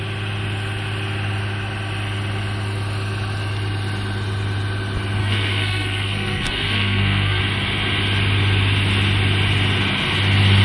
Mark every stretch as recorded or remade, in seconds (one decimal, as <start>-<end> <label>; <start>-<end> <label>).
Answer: 0.0-5.2 recorded; 5.2-7.4 remade; 7.4-10.6 recorded